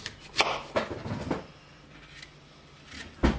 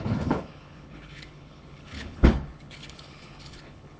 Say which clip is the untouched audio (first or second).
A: first